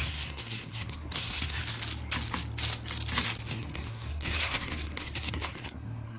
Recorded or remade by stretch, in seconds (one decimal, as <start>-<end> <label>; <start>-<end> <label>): 0.0-1.6 remade; 1.6-3.5 recorded; 3.5-6.2 remade